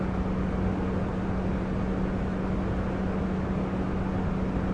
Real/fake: real